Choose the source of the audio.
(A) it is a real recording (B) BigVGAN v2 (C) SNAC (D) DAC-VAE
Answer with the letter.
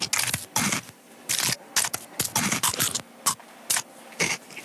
A